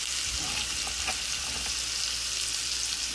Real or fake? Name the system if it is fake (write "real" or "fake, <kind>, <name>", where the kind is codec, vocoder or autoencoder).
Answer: real